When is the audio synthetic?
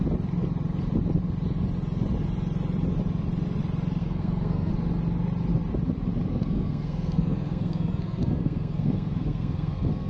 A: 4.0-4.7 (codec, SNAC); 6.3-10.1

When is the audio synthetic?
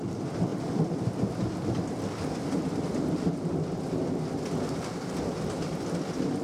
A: none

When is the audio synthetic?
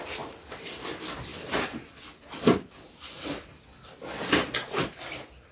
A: none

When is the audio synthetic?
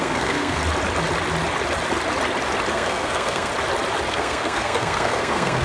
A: 0.0-0.6 (codec, SNAC); 2.7-3.5; 4.1-5.6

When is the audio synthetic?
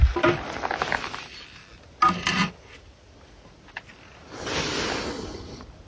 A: none